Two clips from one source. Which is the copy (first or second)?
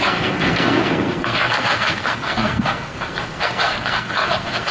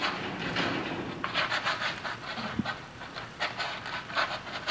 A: first